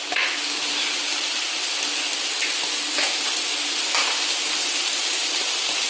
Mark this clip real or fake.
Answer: real